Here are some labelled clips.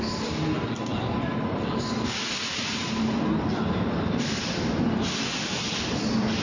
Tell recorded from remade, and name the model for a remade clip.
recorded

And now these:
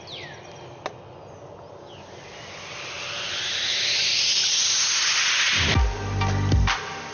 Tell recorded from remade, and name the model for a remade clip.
recorded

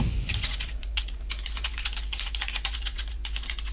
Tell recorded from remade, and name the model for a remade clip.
remade, vocoder, Vocos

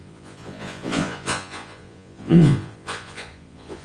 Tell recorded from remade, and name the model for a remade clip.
remade, vocoder, Vocos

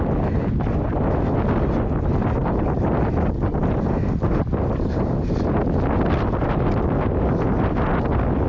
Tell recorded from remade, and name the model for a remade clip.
recorded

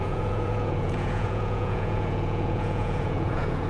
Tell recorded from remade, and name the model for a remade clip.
remade, vocoder, Vocos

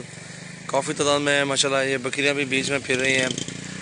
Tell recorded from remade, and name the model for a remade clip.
recorded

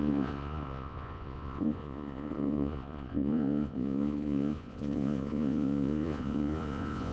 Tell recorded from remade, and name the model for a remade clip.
remade, vocoder, Vocos